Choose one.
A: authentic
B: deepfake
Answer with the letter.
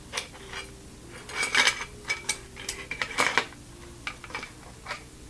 A